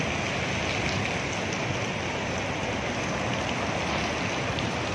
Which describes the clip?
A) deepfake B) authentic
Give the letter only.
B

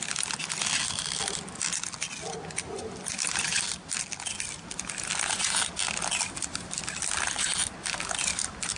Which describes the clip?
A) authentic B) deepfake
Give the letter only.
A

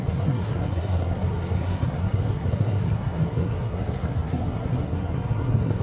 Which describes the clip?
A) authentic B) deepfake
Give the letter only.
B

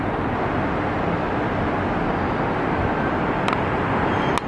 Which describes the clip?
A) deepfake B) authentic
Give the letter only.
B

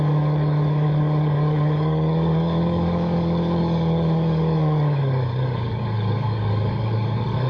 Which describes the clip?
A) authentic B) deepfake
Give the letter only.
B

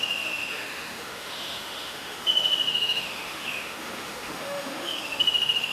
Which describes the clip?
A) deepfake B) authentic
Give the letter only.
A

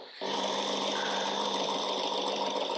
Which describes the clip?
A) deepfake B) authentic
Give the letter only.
A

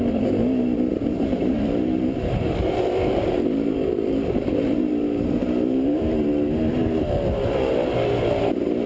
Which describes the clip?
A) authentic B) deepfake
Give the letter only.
B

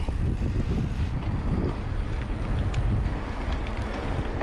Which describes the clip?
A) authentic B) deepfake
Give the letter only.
A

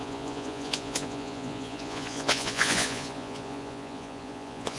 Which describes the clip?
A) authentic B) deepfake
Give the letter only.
B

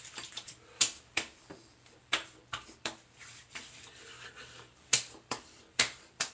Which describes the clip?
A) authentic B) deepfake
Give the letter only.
B